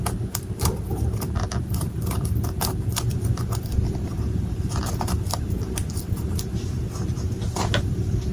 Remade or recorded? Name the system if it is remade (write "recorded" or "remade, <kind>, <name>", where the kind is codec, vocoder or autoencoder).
remade, vocoder, BigVGAN v2